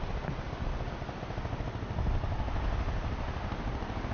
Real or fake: real